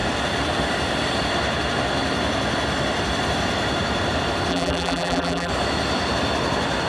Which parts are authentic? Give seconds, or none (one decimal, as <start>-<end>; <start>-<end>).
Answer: 0.0-4.5; 5.5-6.9